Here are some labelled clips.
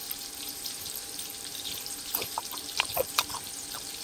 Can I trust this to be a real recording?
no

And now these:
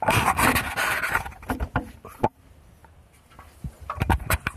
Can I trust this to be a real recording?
yes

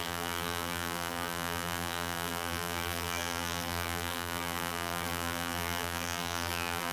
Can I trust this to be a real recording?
no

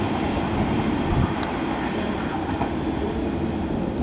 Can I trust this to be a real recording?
yes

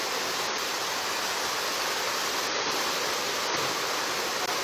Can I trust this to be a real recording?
no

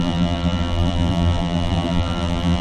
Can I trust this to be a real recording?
no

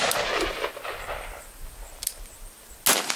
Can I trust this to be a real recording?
yes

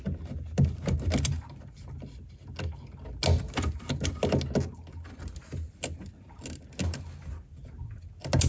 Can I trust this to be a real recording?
yes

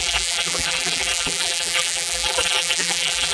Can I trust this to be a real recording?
no